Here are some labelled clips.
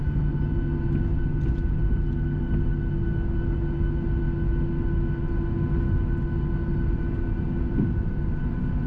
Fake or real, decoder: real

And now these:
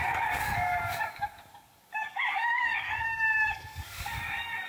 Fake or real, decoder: fake, codec, DAC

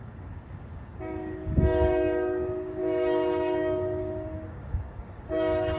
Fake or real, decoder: fake, codec, DAC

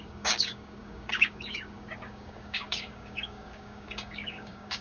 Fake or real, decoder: fake, codec, DAC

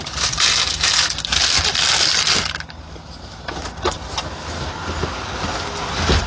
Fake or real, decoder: real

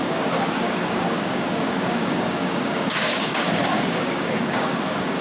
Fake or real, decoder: fake, codec, DAC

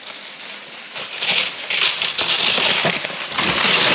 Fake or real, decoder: real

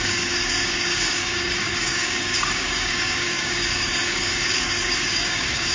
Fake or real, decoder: fake, codec, DAC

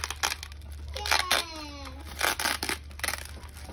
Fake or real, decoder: real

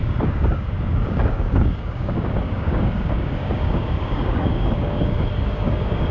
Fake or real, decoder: fake, codec, DAC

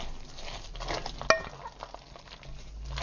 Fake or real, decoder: real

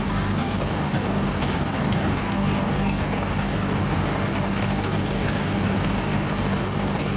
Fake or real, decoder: fake, codec, DAC